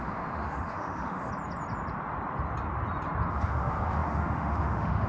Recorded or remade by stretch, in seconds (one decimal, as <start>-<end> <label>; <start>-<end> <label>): 0.0-1.3 remade; 1.3-3.3 recorded; 3.3-5.1 remade